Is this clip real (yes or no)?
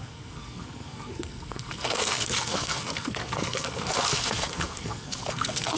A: no